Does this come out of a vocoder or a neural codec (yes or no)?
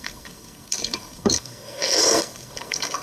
yes